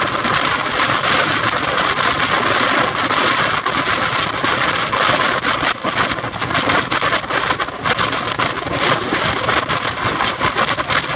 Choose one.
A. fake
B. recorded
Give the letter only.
B